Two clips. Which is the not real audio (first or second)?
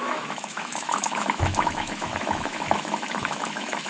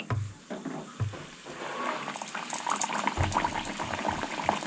first